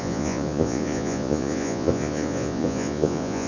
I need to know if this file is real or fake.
fake